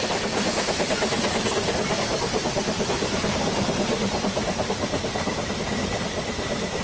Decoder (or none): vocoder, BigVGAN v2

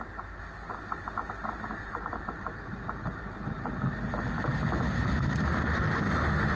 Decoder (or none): none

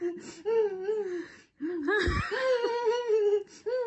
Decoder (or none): none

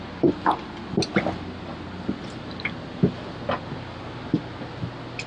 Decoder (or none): none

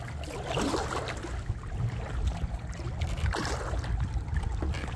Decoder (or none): none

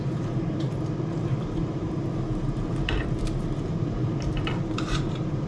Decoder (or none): vocoder, BigVGAN v2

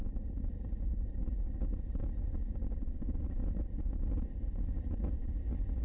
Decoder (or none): none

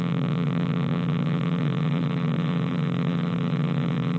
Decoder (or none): vocoder, BigVGAN v2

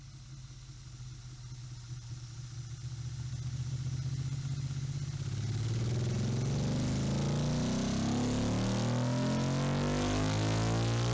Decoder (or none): none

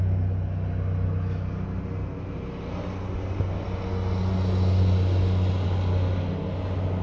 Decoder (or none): none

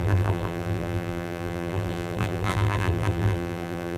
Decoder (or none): vocoder, BigVGAN v2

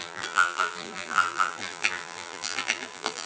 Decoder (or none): vocoder, BigVGAN v2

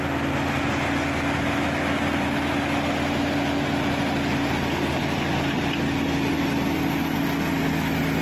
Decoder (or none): none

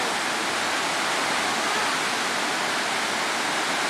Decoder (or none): none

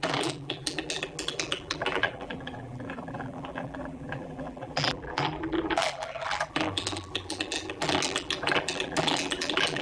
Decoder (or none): vocoder, BigVGAN v2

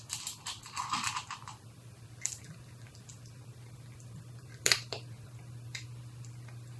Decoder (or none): vocoder, BigVGAN v2